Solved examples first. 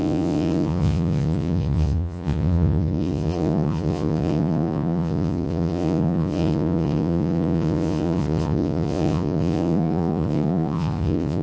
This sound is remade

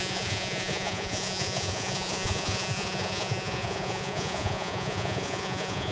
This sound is remade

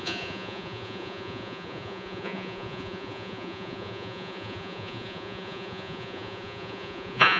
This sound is remade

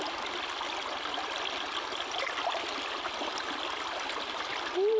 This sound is recorded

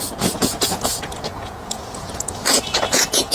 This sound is remade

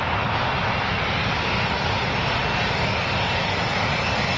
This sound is recorded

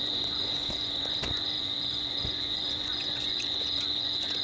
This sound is remade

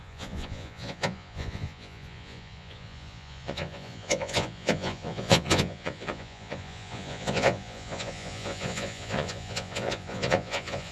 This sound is remade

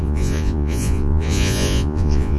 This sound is remade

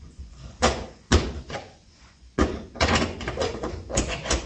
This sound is remade